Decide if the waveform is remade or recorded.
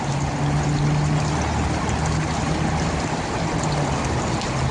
recorded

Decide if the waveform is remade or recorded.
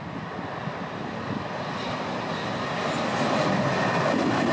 recorded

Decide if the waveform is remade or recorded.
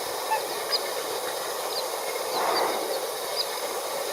recorded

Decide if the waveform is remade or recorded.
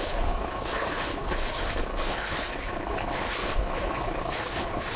remade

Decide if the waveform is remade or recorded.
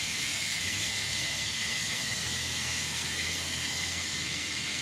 remade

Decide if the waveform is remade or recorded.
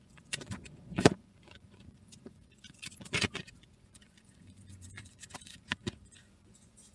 remade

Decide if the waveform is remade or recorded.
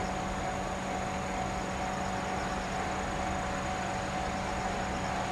recorded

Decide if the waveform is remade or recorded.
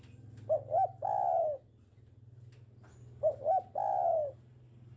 recorded